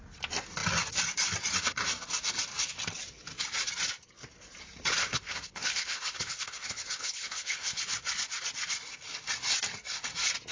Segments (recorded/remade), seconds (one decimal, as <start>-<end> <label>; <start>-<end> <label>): 0.0-5.0 recorded; 5.0-7.8 remade; 7.8-10.5 recorded